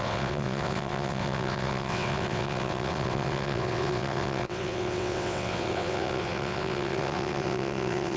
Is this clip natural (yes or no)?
no